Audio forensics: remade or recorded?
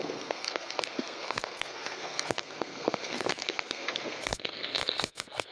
remade